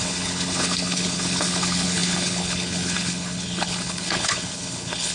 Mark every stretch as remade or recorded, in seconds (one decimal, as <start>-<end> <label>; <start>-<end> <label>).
0.0-5.1 remade